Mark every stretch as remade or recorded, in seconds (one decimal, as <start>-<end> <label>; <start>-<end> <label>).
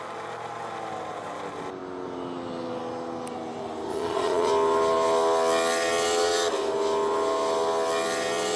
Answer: 0.0-3.9 recorded; 3.9-4.5 remade; 4.5-8.6 recorded